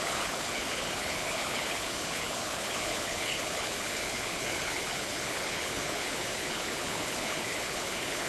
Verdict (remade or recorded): remade